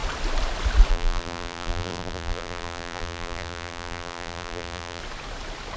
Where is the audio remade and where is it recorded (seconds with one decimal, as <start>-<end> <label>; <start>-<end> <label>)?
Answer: 0.0-0.9 recorded; 0.9-5.0 remade; 5.0-5.8 recorded